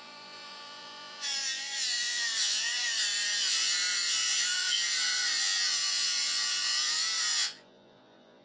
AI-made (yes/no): yes